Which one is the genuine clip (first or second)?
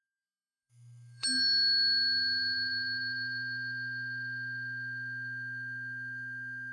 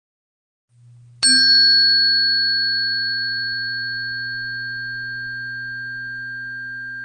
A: second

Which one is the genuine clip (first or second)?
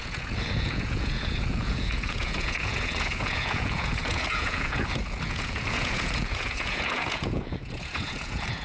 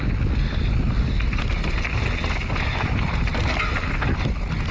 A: second